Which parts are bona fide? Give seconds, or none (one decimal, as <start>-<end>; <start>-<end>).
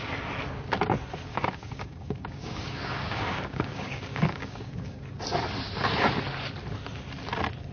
0.0-1.3; 5.2-7.7